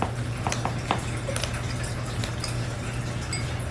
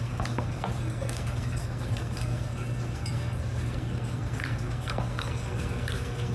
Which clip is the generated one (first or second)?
second